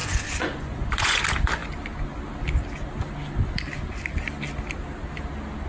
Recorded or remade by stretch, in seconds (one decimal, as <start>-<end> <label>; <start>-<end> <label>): 0.0-1.2 remade; 1.2-5.7 recorded